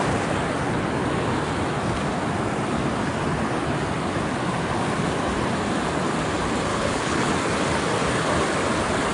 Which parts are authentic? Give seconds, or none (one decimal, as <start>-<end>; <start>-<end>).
0.0-6.7; 7.3-9.1